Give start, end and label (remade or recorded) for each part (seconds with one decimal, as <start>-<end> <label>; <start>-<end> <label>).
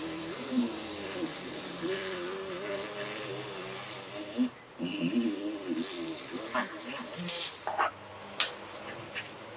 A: 0.0-0.8 remade; 0.8-1.3 recorded; 1.3-1.8 remade; 1.8-6.0 recorded; 6.0-7.9 remade; 7.9-9.6 recorded